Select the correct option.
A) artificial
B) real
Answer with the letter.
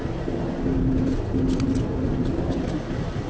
B